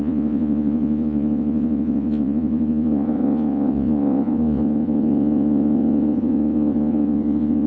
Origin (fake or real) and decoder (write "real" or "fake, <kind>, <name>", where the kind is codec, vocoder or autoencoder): fake, vocoder, Vocos